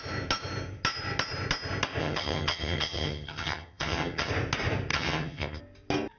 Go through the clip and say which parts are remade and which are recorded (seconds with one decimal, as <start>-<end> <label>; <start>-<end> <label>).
0.0-2.0 recorded; 2.0-4.3 remade; 4.3-4.9 recorded; 4.9-5.6 remade; 5.6-6.2 recorded